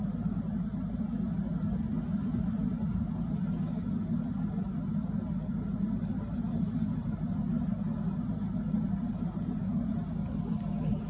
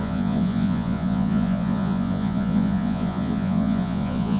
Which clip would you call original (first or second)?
first